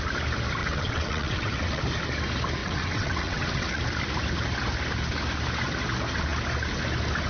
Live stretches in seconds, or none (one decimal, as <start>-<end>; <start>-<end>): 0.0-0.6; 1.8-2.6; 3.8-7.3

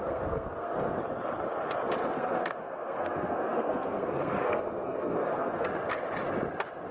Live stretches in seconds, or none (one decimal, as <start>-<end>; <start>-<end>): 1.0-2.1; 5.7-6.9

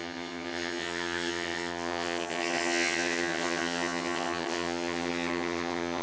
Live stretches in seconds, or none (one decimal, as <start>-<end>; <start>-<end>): none

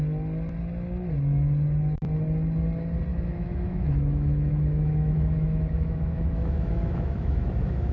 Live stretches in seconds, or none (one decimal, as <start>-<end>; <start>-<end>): 0.0-3.1